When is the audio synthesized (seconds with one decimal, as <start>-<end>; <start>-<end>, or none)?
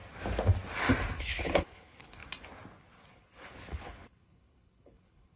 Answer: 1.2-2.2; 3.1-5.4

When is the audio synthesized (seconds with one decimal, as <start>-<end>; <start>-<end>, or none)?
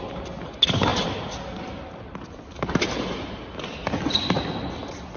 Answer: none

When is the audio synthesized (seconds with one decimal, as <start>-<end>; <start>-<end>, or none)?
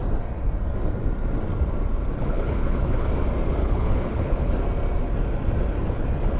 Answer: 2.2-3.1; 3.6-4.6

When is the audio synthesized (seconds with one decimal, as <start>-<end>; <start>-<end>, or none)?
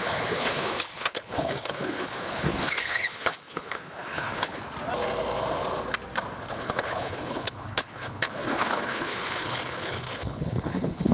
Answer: 0.0-4.6; 6.5-11.1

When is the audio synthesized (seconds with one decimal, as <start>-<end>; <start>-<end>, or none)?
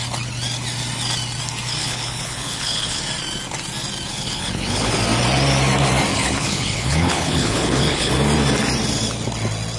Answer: 1.8-3.0; 4.1-4.9; 6.1-8.1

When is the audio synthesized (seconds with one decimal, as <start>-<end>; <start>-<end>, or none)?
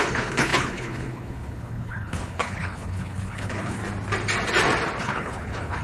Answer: 0.0-3.8; 5.0-5.8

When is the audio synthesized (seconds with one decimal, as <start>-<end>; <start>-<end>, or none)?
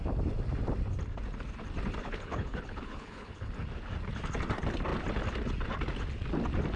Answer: 2.0-3.5